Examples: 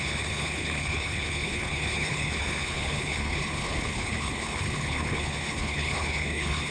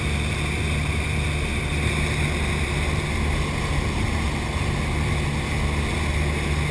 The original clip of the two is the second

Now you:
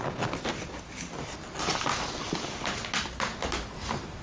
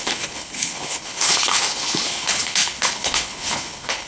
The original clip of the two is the first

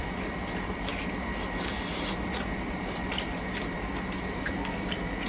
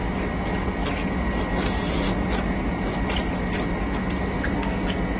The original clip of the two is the second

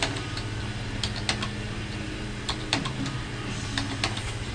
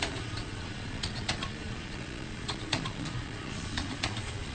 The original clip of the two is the first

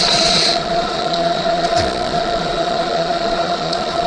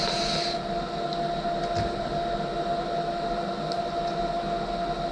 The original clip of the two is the second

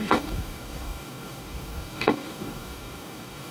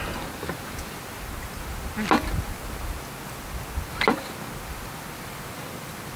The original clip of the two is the second